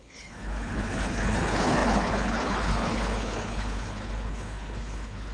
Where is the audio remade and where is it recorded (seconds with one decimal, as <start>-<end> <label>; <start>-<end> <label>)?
0.0-5.3 remade